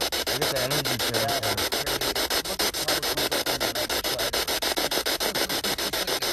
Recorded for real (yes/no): yes